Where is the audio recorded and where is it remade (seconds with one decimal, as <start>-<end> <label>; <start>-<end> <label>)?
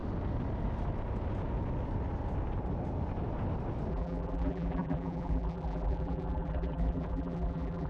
0.0-3.9 recorded; 3.9-7.9 remade